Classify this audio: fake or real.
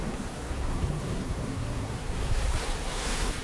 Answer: fake